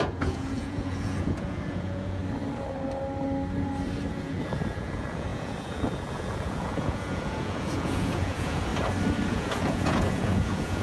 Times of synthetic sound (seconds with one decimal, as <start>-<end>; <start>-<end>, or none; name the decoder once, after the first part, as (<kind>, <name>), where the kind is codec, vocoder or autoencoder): 0.0-2.2 (vocoder, Vocos); 4.1-8.7; 9.3-10.8